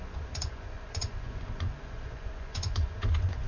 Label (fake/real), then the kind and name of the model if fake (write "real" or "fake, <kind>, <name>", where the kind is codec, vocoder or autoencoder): fake, vocoder, Vocos